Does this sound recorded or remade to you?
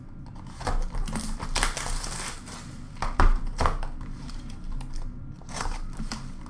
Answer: recorded